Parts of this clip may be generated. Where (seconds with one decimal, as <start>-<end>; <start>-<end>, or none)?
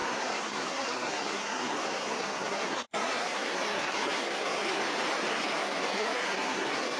0.0-4.8; 5.3-7.0